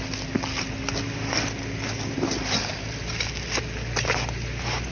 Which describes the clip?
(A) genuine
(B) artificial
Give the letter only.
A